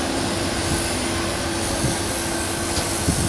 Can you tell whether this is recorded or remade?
recorded